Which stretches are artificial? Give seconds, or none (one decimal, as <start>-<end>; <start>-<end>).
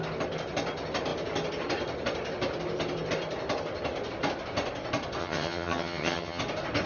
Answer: 5.2-6.4